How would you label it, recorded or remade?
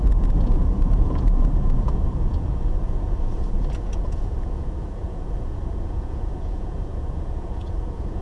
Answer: remade